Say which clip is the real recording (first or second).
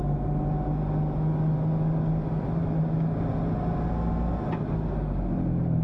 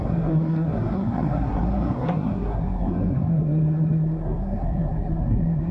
first